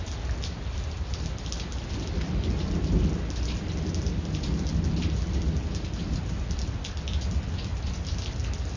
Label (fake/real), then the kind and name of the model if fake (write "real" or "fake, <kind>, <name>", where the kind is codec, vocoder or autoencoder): real